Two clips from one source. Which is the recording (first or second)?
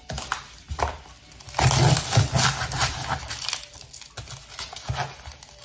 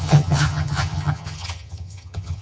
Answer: first